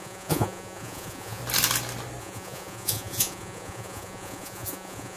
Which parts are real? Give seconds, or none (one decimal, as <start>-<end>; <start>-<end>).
1.4-2.2